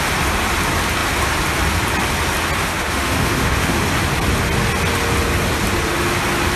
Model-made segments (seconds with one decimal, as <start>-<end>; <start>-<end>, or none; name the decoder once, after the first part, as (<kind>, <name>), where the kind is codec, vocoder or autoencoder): 2.7-3.8 (autoencoder, DAC-VAE)